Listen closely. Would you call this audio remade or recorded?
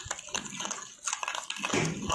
recorded